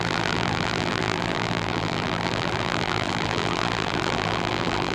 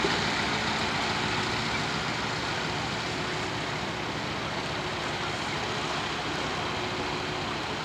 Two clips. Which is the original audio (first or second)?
second